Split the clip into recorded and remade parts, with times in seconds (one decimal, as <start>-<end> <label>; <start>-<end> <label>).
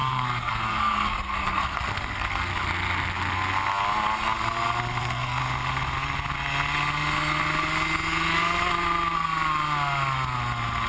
0.0-2.5 remade; 2.5-5.0 recorded; 5.0-5.4 remade; 5.4-10.9 recorded